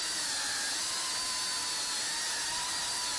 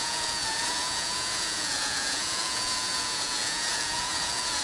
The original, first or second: first